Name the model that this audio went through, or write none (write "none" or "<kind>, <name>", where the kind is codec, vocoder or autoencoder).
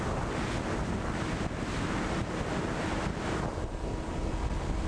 none